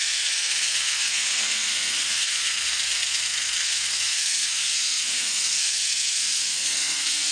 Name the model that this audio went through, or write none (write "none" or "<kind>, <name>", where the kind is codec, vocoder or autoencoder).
codec, SNAC